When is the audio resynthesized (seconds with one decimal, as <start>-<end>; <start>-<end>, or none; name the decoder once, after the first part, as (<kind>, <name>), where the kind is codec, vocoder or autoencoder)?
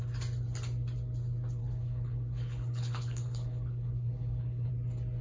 1.6-4.7 (codec, HILCodec)